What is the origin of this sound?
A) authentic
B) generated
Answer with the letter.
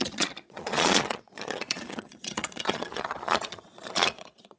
B